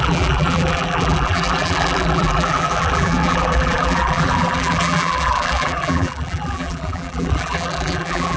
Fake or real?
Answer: fake